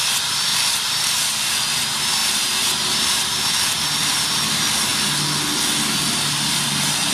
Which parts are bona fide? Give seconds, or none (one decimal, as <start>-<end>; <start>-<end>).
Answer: 0.0-0.5; 1.5-2.2; 3.2-7.1